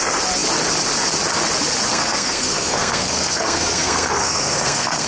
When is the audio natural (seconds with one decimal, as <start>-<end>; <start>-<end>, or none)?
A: 0.0-1.9